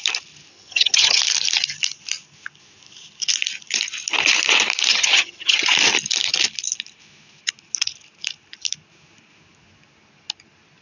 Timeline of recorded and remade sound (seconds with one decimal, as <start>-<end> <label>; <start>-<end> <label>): 0.0-0.5 recorded; 0.5-1.2 remade; 1.2-4.9 recorded; 4.9-5.7 remade; 5.7-10.8 recorded